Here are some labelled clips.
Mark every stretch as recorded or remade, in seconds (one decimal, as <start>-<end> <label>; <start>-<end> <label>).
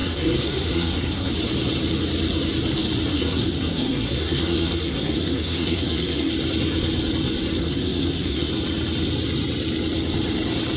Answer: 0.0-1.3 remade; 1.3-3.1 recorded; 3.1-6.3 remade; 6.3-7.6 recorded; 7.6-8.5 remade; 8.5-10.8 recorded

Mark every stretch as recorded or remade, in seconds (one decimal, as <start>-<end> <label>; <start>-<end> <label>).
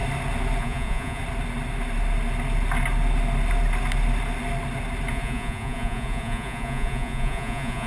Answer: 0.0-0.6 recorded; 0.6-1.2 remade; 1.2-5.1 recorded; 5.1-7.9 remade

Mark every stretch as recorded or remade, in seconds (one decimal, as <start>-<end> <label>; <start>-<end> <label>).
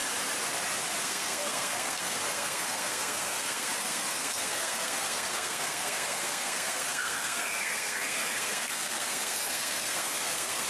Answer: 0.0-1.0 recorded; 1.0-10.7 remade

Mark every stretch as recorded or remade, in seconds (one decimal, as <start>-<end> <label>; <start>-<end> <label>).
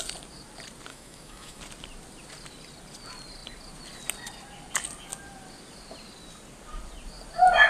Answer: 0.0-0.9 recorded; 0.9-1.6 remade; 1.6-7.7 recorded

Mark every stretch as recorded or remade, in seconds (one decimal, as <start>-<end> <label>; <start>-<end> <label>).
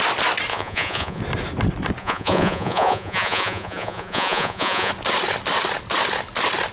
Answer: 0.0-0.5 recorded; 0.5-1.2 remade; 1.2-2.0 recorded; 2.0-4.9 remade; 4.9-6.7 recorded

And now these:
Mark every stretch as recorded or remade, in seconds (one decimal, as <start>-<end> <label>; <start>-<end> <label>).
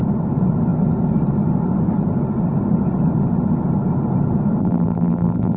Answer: 0.0-4.6 recorded; 4.6-5.6 remade